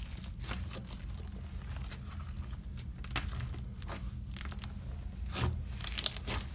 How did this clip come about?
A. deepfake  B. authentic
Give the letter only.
B